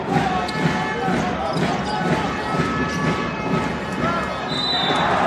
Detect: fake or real real